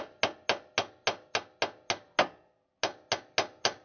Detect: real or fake real